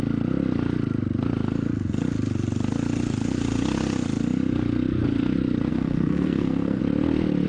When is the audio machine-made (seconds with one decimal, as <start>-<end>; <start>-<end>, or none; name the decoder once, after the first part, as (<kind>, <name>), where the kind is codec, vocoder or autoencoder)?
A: 5.7-6.8 (codec, SNAC)